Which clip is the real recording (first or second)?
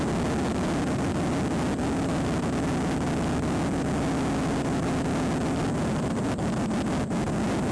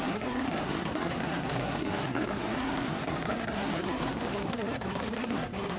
first